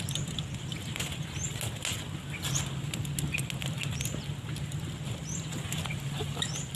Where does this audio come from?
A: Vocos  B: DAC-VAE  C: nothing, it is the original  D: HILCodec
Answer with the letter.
C